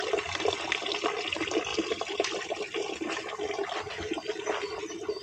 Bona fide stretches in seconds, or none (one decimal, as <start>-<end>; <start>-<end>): 0.0-5.2